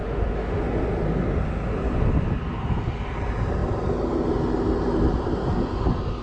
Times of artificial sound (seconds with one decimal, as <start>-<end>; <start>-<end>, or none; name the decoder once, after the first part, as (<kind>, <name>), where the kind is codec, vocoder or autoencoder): 0.0-0.6 (autoencoder, DAC-VAE)